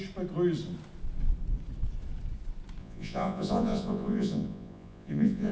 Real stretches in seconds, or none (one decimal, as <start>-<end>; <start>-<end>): 0.0-2.8